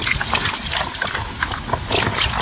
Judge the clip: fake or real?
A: real